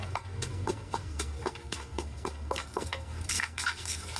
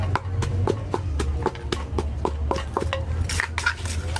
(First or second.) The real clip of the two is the second